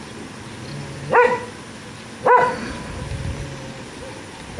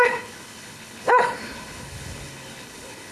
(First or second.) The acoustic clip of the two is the first